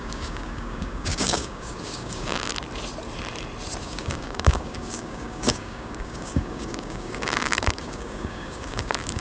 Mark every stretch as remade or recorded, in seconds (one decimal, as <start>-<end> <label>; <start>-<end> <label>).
0.0-2.5 remade; 2.5-3.8 recorded; 3.8-9.2 remade